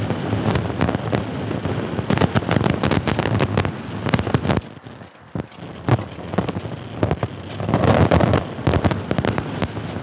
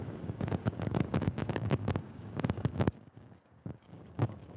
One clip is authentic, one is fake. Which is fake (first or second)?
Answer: second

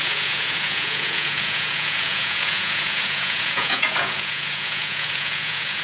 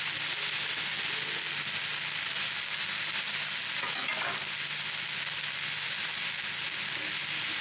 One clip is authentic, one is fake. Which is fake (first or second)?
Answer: first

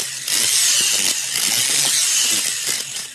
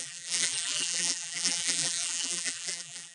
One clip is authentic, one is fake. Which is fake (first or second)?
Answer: second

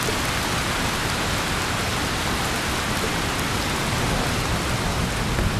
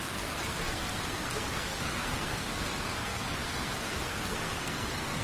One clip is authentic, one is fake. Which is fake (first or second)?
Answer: second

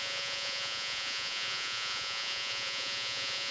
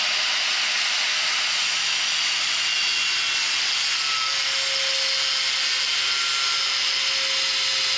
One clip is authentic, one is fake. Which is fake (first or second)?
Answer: first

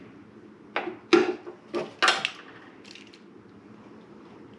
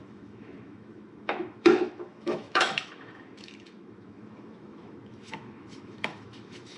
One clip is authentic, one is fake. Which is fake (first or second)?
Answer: second